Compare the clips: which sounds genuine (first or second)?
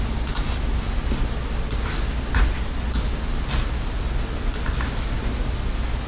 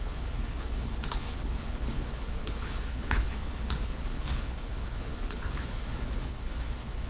first